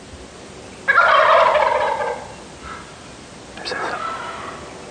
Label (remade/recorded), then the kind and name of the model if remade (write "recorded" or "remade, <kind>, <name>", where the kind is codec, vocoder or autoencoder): recorded